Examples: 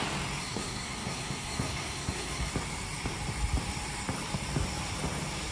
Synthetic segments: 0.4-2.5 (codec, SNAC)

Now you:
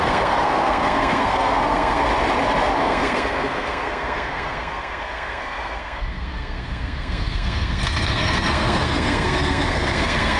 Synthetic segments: 0.0-2.1 (codec, SNAC); 2.8-10.4

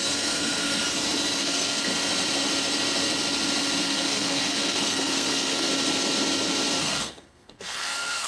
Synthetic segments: 0.0-0.8 (codec, SNAC); 1.4-1.9; 3.8-5.7; 6.8-8.3

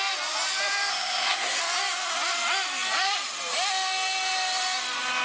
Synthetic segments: 0.9-1.6 (codec, SNAC)

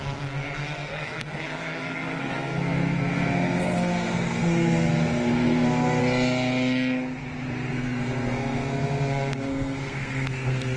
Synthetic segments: 0.0-6.0 (codec, SNAC); 7.7-10.8

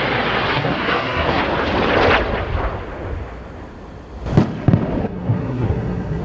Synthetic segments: 0.5-1.4 (codec, SNAC); 5.0-6.2